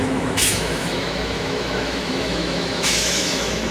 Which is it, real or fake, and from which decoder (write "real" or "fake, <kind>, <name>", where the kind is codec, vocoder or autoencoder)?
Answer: fake, autoencoder, DAC-VAE